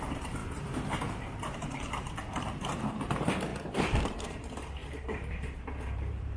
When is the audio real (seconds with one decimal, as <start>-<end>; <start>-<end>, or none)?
none